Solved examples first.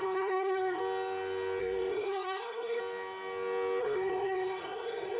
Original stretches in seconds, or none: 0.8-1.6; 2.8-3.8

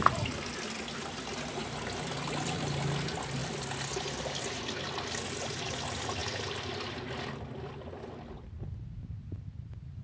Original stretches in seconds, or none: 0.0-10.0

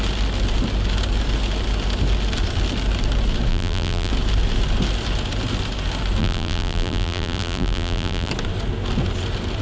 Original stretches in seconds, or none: 0.0-3.5; 4.1-6.2; 8.3-9.6

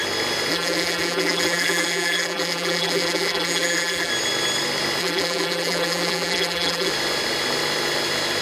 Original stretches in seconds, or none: 0.0-0.5; 4.1-5.0; 6.9-8.4